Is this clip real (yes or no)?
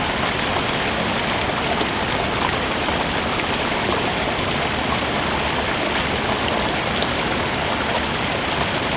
yes